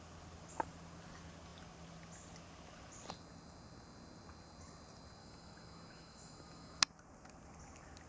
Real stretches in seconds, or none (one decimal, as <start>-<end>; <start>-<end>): 0.0-5.2; 6.8-8.1